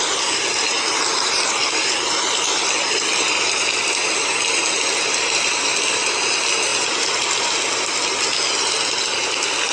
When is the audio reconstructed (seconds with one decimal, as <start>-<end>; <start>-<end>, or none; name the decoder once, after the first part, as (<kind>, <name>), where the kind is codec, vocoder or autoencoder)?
none